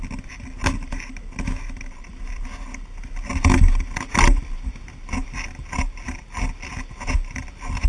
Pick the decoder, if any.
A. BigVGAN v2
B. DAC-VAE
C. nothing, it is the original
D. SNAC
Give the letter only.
C